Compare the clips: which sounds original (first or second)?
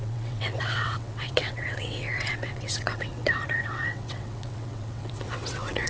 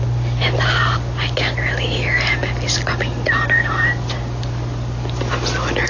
second